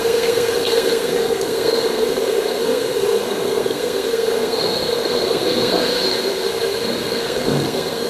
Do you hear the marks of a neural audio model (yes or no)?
yes